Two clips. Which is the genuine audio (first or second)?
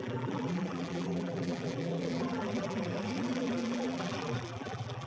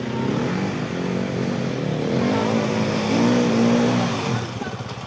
second